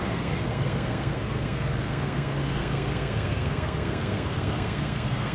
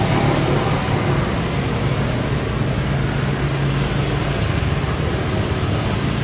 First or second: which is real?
second